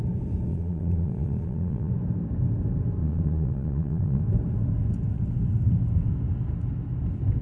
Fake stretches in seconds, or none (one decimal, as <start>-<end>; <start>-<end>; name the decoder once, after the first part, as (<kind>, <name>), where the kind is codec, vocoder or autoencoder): 0.5-1.9 (vocoder, Vocos); 3.0-4.2